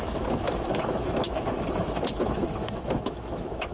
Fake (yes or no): yes